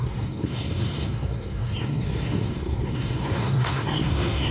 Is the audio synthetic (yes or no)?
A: yes